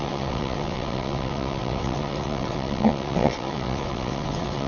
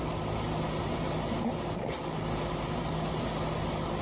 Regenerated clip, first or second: first